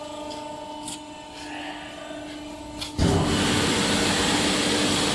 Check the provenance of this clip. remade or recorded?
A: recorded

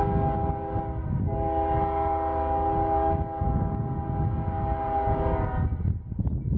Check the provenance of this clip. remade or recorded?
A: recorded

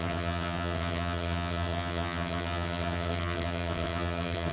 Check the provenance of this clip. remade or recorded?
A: remade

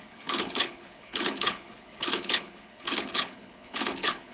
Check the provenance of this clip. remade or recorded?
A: remade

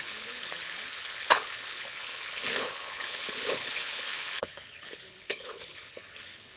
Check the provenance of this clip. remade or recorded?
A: remade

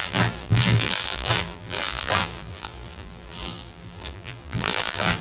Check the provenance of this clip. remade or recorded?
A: remade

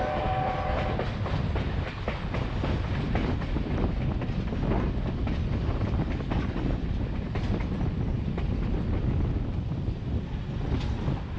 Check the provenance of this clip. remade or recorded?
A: recorded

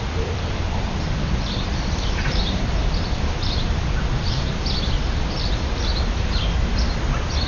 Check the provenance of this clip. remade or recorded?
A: remade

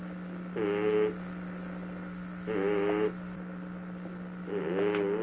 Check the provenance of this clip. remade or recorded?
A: recorded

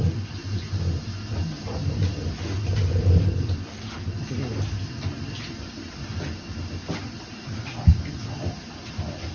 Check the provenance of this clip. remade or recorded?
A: recorded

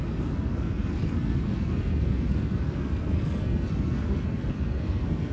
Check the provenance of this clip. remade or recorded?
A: remade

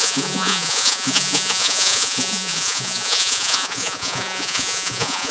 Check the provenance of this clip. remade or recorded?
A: remade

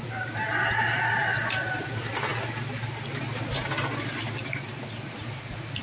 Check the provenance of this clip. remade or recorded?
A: recorded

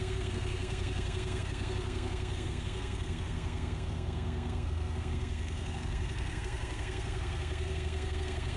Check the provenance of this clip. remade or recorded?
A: remade